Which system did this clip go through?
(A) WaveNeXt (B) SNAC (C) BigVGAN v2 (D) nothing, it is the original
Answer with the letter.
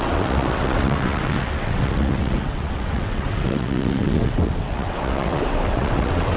A